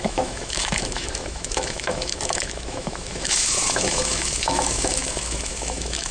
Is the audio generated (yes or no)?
yes